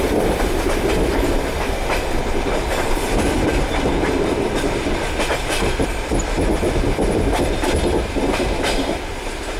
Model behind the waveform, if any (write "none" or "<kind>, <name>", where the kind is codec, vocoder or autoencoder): vocoder, BigVGAN v2